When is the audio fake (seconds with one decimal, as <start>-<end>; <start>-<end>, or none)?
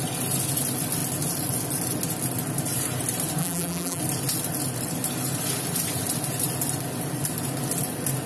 3.4-4.0